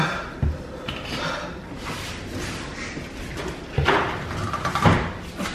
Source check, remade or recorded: recorded